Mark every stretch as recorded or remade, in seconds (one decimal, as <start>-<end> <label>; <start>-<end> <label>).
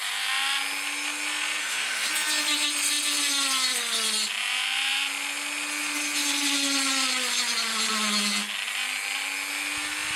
0.0-1.6 recorded; 1.6-2.1 remade; 2.1-10.2 recorded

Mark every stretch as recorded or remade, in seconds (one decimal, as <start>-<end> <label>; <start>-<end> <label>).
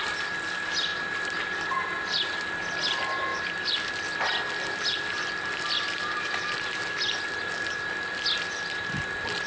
0.0-0.9 recorded; 0.9-2.3 remade; 2.3-3.3 recorded; 3.3-7.3 remade; 7.3-9.5 recorded